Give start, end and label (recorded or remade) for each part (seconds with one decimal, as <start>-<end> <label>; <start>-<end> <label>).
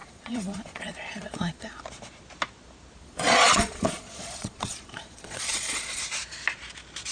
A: 0.0-1.8 remade; 1.8-3.0 recorded; 3.0-6.0 remade; 6.0-7.1 recorded